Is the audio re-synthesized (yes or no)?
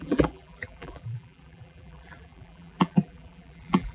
yes